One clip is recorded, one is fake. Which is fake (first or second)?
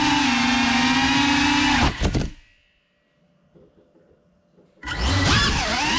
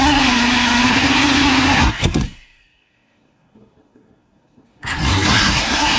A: second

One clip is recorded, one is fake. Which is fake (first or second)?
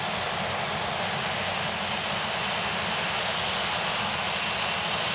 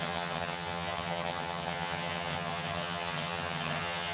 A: second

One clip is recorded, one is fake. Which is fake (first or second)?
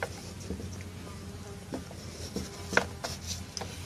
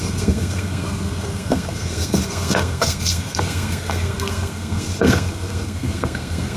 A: second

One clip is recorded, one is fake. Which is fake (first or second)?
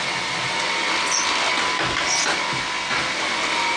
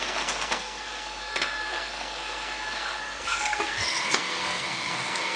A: second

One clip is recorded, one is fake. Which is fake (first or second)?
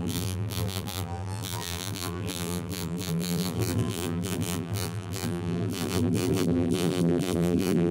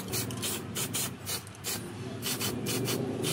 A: first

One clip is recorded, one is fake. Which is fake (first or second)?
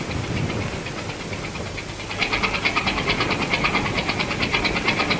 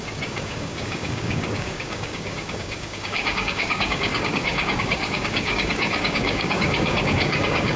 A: second